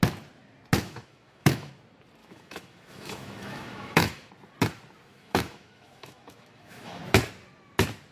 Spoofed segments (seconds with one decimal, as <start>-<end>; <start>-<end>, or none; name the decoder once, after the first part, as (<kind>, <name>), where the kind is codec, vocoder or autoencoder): 0.8-1.7 (autoencoder, DAC-VAE); 2.2-4.3; 5.1-7.0